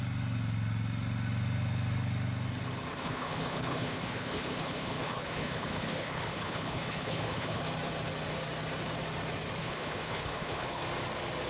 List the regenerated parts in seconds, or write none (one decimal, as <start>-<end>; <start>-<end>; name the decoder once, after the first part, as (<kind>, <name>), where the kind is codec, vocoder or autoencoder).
2.9-7.6 (codec, HILCodec); 9.6-10.8